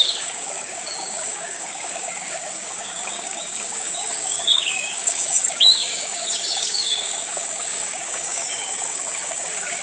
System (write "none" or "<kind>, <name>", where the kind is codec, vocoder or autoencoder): codec, DAC